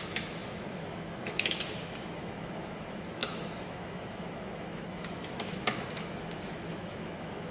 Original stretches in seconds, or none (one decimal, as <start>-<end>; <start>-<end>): none